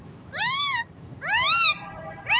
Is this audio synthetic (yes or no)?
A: yes